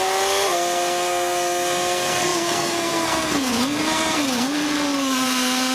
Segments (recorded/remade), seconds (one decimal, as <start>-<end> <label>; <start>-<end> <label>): 0.0-5.7 remade